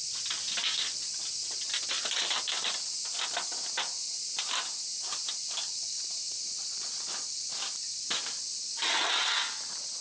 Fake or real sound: real